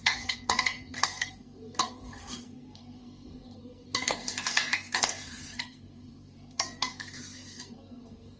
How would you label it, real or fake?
fake